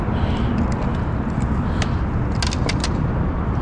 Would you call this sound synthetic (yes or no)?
no